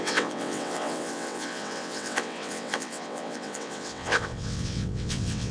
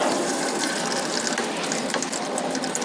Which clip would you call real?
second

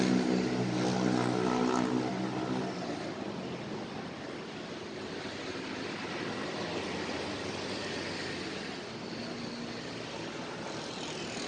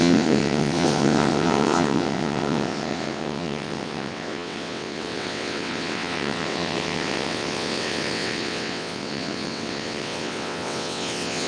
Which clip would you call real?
first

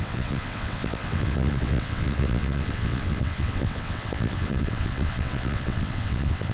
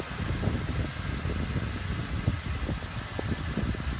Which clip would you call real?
second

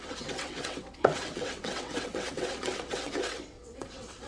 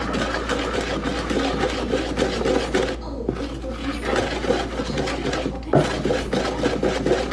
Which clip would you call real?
second